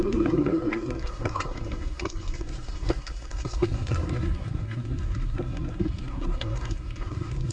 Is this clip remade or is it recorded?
remade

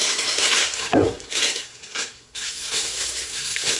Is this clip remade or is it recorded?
remade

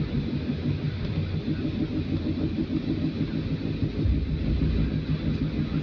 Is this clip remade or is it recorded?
recorded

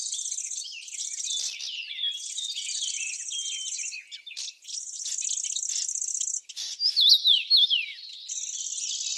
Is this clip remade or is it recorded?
recorded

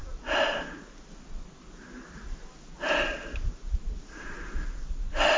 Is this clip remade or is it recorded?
recorded